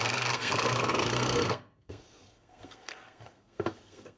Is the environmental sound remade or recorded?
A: remade